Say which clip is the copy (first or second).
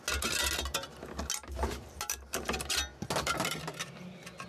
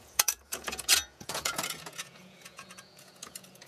second